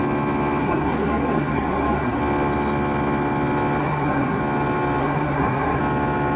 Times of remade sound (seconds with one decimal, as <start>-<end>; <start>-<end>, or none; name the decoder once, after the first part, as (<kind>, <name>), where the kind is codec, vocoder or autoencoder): 0.6-2.2 (codec, SNAC); 3.8-4.4; 5.0-5.8